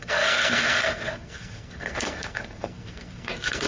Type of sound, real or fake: fake